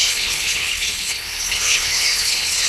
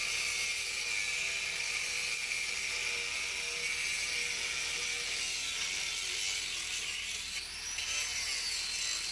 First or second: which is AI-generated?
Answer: first